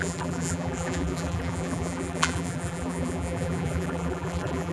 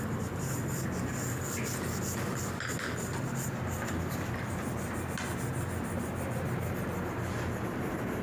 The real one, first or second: second